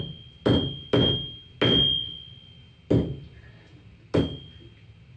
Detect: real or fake real